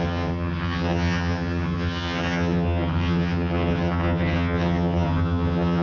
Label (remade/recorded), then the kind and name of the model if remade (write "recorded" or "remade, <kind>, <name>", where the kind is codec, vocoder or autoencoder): remade, vocoder, HiFi-GAN